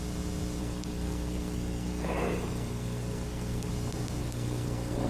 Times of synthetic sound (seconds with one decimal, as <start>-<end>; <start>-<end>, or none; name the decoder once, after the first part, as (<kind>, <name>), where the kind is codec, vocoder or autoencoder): 0.6-3.7 (codec, SNAC); 4.2-5.1